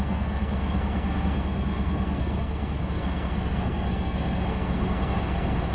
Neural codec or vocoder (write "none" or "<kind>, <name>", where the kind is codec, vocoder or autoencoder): codec, SNAC